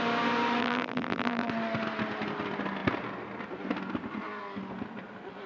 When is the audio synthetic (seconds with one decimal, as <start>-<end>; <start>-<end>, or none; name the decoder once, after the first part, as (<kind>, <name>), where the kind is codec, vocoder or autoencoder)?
0.6-1.5 (vocoder, BigVGAN v2)